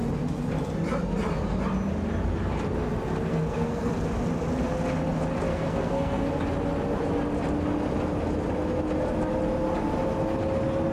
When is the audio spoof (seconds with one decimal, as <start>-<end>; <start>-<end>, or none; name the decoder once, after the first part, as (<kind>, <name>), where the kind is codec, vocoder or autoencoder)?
3.2-3.9 (codec, SNAC); 5.5-6.4